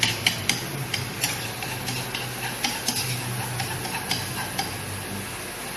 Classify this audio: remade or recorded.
recorded